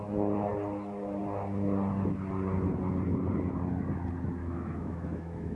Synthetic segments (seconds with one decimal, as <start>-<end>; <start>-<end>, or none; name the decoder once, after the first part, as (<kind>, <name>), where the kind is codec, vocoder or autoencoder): 4.4-5.6 (autoencoder, DAC-VAE)